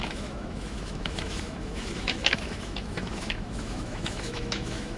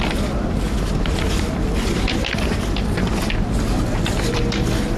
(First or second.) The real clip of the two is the second